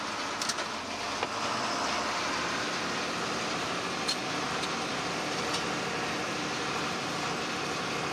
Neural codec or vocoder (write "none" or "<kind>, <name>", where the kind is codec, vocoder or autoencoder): none